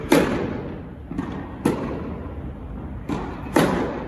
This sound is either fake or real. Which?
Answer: real